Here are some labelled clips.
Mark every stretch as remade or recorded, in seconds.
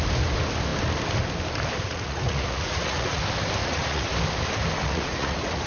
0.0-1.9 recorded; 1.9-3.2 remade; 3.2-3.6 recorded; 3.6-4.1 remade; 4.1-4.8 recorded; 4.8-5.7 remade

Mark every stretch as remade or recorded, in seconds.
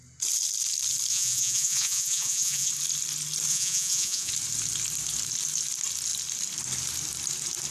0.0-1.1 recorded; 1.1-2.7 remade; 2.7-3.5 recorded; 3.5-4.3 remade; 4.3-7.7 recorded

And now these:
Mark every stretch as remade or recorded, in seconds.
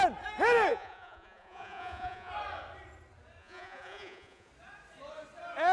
0.0-0.7 recorded; 0.7-2.3 remade; 2.3-3.4 recorded; 3.4-4.5 remade; 4.5-5.7 recorded